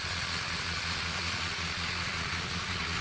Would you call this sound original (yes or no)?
no